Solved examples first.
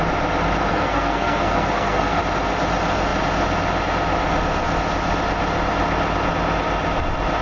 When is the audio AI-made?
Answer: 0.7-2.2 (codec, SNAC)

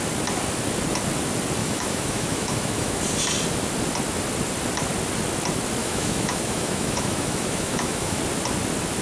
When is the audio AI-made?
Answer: 1.6-3.0 (autoencoder, DAC-VAE); 5.8-8.2

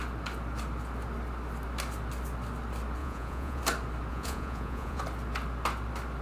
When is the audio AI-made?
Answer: 3.0-3.6 (vocoder, Vocos); 4.1-5.0

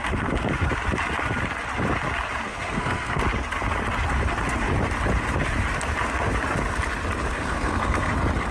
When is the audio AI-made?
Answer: 2.5-3.2 (codec, SNAC); 7.3-8.1

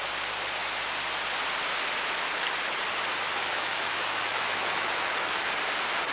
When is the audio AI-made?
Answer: 3.4-5.5 (autoencoder, DAC-VAE)

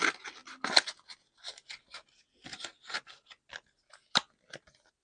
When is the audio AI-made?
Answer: none